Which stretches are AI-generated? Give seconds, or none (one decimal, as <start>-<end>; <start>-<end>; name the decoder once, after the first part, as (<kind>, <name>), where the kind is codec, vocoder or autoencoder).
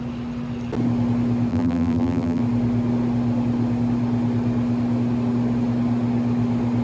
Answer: 1.5-2.4 (vocoder, BigVGAN v2)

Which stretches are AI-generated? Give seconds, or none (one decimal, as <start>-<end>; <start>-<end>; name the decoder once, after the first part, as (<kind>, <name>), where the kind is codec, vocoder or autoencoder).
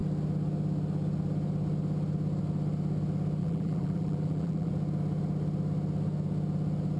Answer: 3.4-4.7 (vocoder, BigVGAN v2)